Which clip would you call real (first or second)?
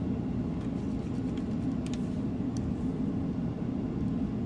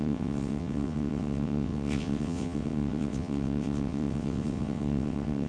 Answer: first